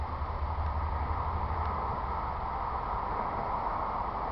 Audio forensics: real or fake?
real